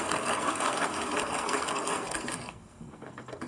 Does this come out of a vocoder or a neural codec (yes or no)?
yes